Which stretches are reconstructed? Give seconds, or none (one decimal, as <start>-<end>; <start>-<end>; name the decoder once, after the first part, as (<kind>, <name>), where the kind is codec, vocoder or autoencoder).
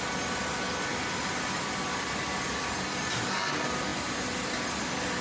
none